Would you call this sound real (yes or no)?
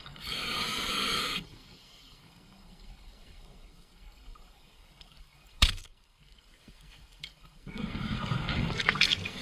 no